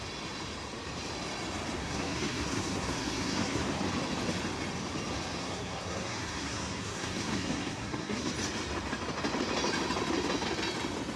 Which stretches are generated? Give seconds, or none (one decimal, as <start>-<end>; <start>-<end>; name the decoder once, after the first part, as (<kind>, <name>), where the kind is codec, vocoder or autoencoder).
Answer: 1.8-3.6 (codec, SNAC); 5.4-8.3